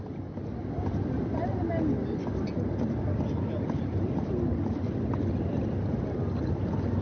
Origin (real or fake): real